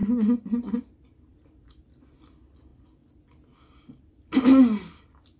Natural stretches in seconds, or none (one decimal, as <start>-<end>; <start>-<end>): 0.0-5.4